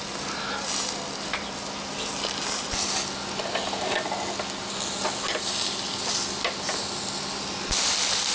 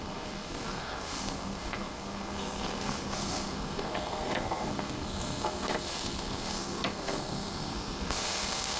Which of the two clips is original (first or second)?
first